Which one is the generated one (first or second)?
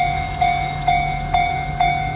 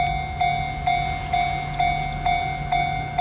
first